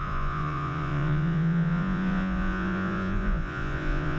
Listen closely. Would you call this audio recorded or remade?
remade